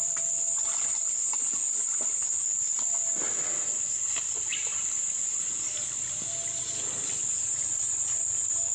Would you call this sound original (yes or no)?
yes